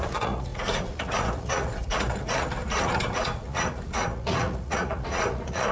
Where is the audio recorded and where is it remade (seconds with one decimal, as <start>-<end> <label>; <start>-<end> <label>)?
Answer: 0.0-5.7 remade